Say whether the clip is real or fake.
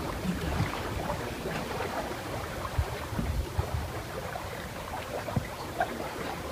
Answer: fake